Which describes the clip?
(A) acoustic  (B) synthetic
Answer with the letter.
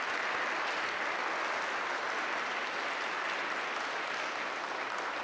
A